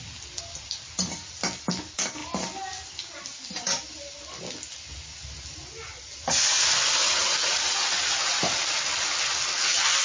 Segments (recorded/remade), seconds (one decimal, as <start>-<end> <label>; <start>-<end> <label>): 0.0-10.0 recorded